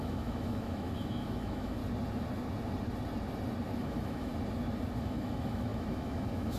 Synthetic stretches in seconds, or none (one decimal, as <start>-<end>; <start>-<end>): 0.0-1.8; 3.8-4.3; 5.0-6.6